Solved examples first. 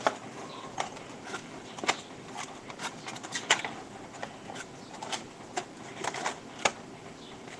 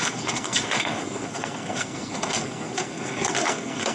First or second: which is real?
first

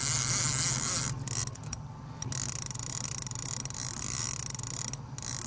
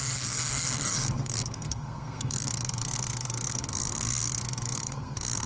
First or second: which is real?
first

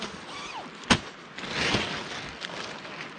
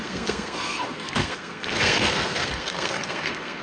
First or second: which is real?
first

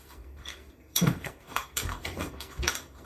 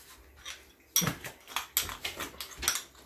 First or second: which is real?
second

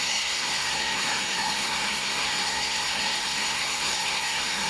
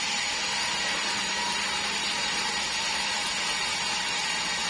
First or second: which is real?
second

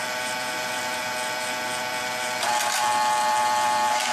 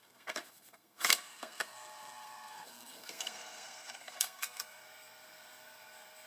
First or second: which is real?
first